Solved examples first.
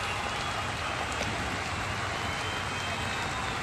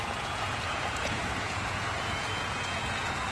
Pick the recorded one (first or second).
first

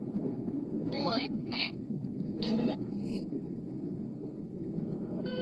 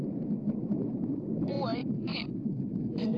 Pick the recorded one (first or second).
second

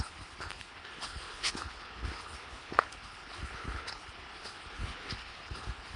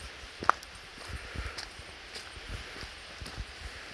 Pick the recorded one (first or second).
second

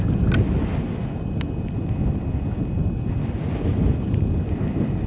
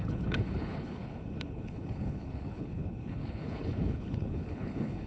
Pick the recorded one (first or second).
first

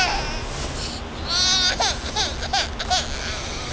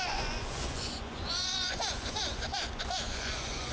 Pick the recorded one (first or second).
first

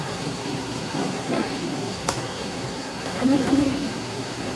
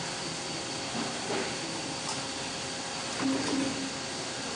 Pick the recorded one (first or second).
second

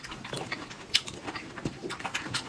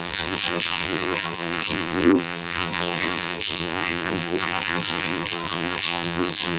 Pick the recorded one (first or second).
first